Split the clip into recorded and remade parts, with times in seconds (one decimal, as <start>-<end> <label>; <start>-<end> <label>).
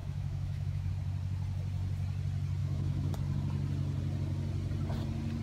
0.0-0.9 remade; 0.9-2.6 recorded; 2.6-3.1 remade; 3.1-5.4 recorded